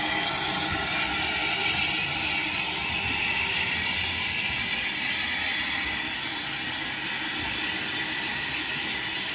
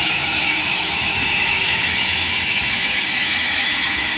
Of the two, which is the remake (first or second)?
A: second